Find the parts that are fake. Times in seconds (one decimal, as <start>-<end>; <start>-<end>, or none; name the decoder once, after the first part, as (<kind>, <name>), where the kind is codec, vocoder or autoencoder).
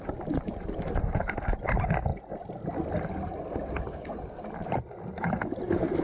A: none